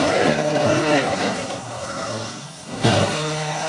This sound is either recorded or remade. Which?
remade